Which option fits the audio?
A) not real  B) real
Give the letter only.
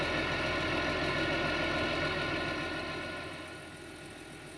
B